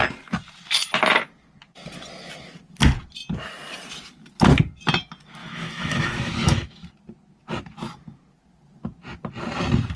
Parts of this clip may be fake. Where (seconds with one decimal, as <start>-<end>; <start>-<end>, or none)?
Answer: 5.4-6.9